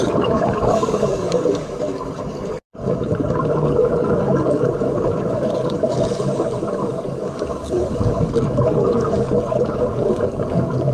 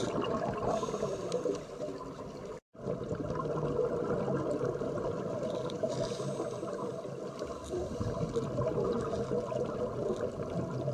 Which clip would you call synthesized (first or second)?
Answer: first